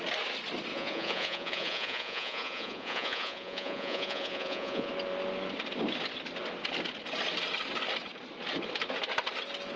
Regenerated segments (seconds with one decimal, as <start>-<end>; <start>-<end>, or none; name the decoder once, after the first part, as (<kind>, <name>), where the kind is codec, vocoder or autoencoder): 0.7-4.9 (vocoder, Vocos)